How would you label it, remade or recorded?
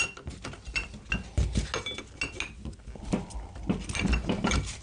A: recorded